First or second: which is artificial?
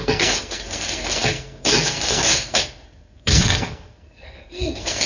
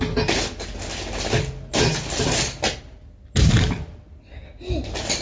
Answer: first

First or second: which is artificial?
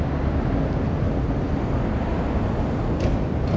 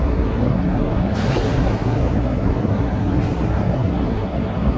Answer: second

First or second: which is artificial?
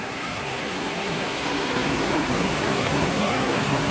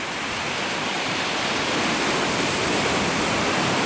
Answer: first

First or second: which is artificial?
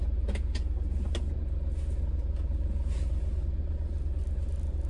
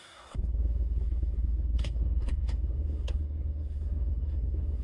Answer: second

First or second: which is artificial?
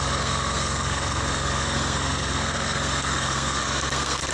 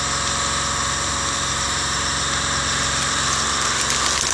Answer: first